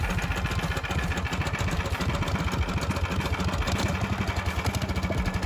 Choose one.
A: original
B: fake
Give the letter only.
A